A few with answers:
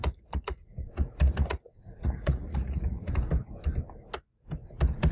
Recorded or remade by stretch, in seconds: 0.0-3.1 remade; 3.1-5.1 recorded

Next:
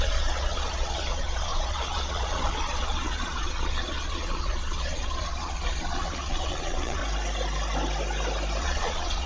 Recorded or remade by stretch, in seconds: 0.0-7.0 remade; 7.0-8.6 recorded; 8.6-9.3 remade

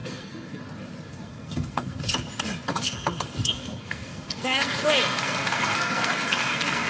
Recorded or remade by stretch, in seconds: 0.0-0.6 remade; 0.6-1.1 recorded; 1.1-2.0 remade; 2.0-2.7 recorded; 2.7-6.9 remade

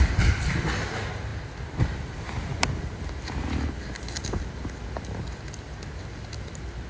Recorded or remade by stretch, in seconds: 0.0-6.9 recorded

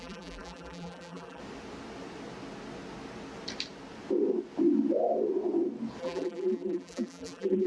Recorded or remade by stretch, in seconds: 0.0-1.4 remade; 1.4-6.0 recorded; 6.0-7.7 remade

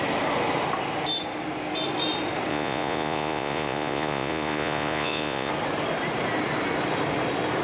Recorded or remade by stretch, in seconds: 0.0-2.5 recorded; 2.5-5.5 remade; 5.5-7.6 recorded

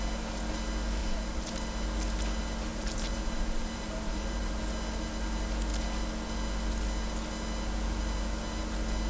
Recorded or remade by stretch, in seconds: 0.0-1.0 recorded; 1.0-1.5 remade; 1.5-2.7 recorded; 2.7-4.6 remade; 4.6-9.1 recorded